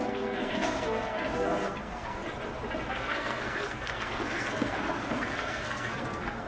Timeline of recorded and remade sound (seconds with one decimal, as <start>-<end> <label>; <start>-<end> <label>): 0.0-2.2 remade; 2.2-2.9 recorded; 2.9-6.5 remade